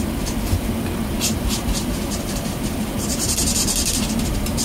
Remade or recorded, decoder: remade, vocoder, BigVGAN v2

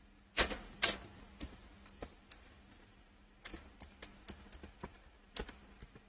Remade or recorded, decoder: recorded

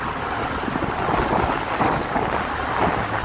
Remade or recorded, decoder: recorded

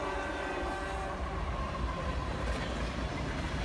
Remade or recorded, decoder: remade, vocoder, BigVGAN v2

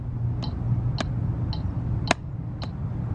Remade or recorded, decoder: recorded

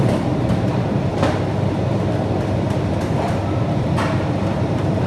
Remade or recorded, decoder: remade, vocoder, BigVGAN v2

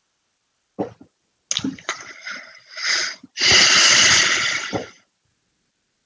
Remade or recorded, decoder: recorded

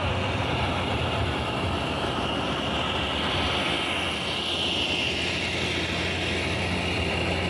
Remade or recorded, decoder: recorded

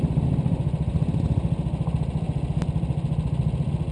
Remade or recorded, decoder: recorded